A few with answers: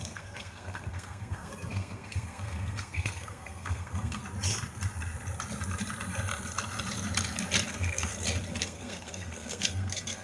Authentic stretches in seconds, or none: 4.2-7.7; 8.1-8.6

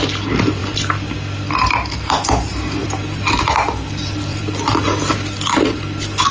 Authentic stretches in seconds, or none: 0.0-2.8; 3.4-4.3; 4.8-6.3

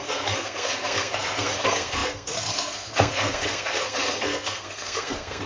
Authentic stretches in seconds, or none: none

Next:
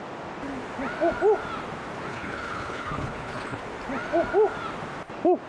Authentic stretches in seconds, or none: 0.0-2.1; 3.6-5.5